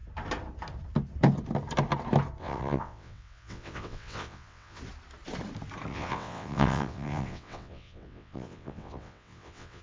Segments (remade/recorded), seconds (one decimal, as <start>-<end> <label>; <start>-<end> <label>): 0.0-2.4 recorded; 2.4-4.8 remade; 4.8-5.9 recorded; 5.9-9.8 remade